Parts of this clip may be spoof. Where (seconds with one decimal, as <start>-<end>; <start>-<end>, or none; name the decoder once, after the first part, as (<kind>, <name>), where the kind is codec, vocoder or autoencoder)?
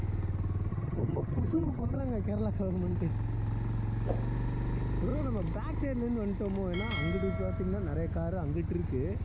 0.7-2.0 (vocoder, HiFi-GAN)